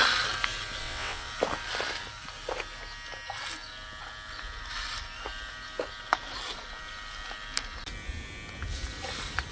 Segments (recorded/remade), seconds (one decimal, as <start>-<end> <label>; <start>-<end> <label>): 0.0-0.8 recorded; 0.8-1.3 remade; 1.3-9.5 recorded